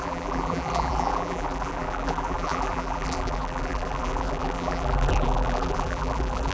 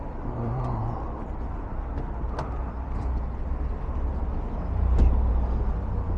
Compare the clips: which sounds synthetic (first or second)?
first